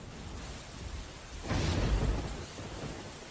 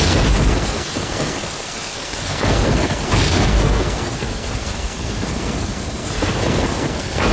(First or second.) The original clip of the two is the first